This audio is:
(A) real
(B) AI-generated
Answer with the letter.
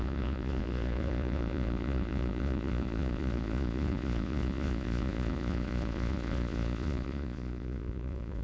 B